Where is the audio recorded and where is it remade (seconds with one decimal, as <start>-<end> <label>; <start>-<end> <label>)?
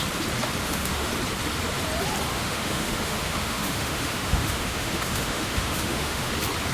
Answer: 0.0-0.6 recorded; 0.6-1.1 remade; 1.1-2.3 recorded; 2.3-6.3 remade; 6.3-6.7 recorded